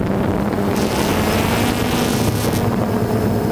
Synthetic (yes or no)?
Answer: no